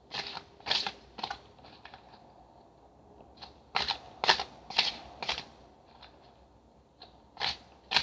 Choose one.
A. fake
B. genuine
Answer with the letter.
B